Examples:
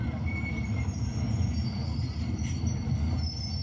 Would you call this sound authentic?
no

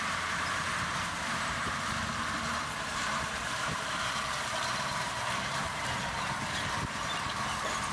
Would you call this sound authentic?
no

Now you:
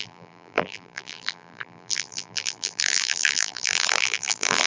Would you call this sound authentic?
no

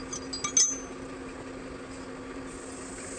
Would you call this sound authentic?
yes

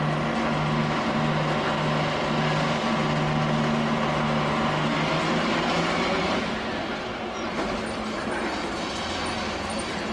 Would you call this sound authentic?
yes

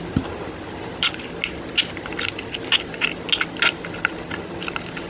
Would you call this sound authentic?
yes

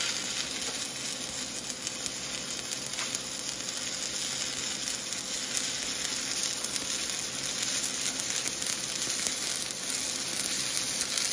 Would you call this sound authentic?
yes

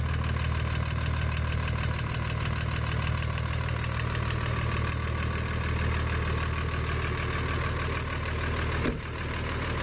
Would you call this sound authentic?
yes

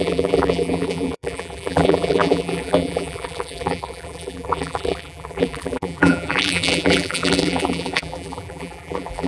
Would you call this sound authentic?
no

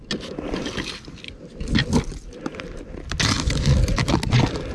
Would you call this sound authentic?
yes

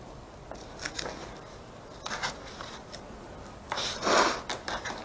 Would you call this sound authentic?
yes